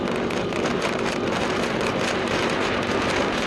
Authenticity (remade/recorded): remade